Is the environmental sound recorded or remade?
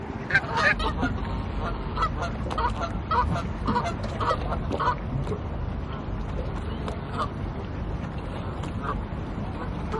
recorded